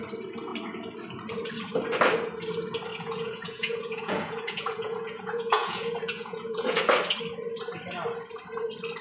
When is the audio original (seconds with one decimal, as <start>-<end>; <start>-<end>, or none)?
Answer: 0.0-2.9; 6.8-9.0